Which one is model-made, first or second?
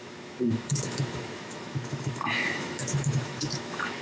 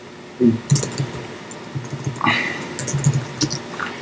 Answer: first